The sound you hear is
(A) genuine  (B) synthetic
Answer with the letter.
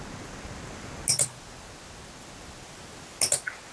A